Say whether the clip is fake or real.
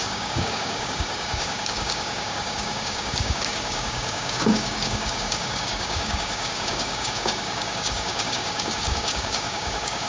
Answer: fake